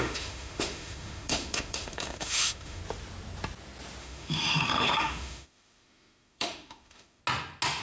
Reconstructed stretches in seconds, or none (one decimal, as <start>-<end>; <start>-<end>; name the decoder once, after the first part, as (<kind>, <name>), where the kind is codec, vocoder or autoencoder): 0.0-2.8 (autoencoder, DAC-VAE); 4.0-7.2